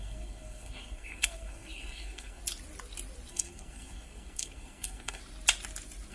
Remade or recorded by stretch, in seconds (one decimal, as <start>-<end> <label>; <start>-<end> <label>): 0.0-2.4 remade; 2.4-3.3 recorded; 3.3-5.2 remade; 5.2-6.1 recorded